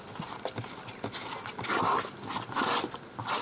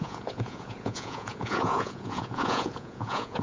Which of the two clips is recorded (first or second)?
first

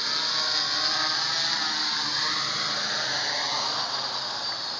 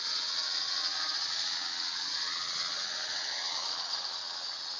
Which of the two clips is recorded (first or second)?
first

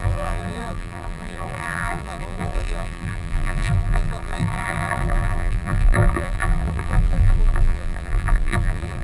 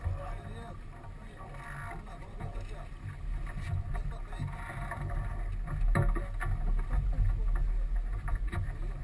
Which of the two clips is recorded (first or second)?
second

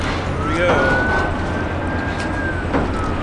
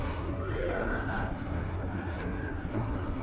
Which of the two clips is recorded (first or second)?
first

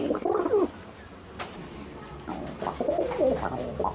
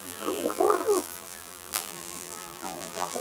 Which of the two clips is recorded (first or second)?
first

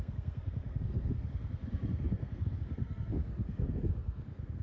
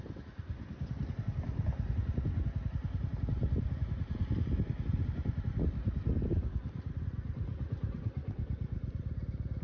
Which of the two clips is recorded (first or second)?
second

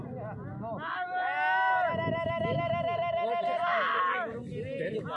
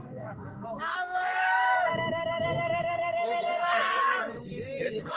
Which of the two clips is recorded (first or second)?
first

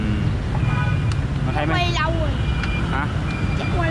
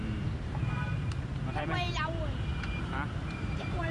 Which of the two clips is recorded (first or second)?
first